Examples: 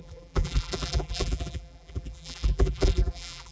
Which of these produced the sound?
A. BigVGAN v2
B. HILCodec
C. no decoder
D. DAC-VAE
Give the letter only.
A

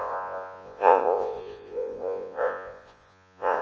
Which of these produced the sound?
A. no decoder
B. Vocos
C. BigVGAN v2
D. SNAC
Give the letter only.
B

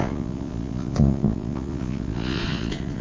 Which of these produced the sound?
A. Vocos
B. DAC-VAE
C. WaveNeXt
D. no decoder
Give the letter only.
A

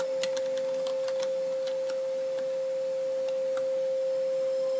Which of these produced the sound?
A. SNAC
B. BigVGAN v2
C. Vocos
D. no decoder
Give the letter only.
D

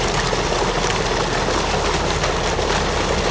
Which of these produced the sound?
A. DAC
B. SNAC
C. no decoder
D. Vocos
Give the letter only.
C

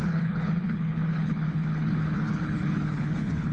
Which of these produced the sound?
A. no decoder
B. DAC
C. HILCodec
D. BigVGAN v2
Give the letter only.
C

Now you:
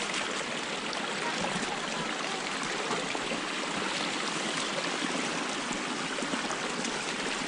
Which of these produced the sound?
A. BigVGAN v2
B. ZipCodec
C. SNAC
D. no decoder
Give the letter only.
D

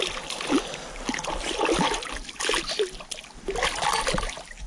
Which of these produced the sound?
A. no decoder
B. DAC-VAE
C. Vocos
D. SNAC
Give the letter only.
A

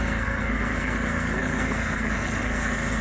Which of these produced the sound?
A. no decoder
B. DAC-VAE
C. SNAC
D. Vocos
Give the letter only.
C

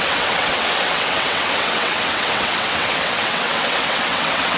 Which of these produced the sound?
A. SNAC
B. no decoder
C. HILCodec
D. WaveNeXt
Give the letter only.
D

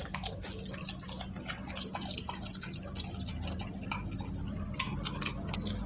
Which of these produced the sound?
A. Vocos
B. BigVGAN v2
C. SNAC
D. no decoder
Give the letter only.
D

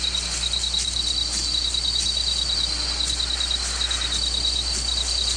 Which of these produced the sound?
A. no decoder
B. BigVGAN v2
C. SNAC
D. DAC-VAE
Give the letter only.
A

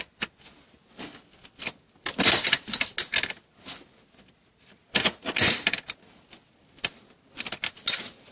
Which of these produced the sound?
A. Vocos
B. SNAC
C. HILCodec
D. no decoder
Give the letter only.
D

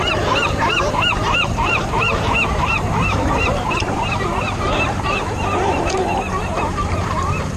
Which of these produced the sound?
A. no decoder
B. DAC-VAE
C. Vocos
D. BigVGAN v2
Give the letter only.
D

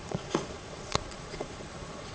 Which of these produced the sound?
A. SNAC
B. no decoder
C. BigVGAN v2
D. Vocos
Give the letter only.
D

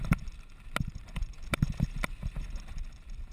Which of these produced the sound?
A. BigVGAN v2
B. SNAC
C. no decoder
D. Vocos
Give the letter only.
C